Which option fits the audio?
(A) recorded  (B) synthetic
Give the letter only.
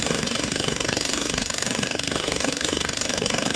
B